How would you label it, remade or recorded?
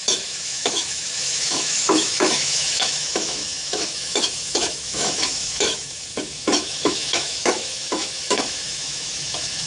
remade